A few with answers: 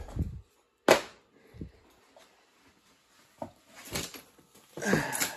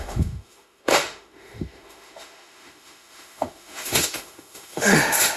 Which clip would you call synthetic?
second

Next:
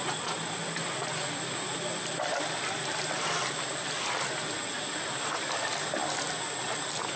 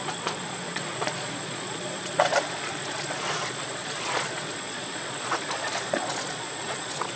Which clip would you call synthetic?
second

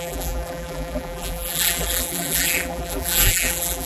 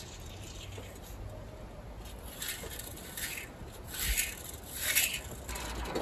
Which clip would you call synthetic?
first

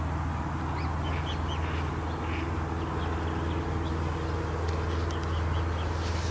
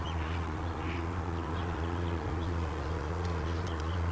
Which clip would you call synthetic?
second